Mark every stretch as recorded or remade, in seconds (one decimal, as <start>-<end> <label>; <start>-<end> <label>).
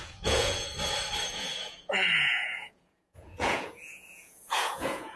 0.0-0.7 remade; 0.7-1.3 recorded; 1.3-5.2 remade